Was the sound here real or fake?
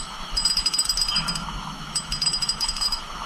fake